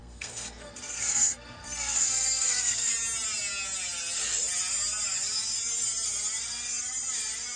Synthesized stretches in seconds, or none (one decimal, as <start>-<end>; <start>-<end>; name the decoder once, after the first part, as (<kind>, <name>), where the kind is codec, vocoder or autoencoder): 0.0-2.9 (codec, SNAC)